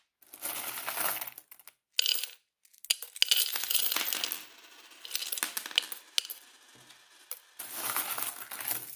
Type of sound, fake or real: real